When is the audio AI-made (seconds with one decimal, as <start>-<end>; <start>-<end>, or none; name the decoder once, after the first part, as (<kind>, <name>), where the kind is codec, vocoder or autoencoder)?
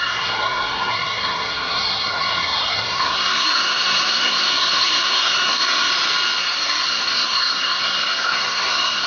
0.0-5.9 (codec, SNAC); 6.4-9.1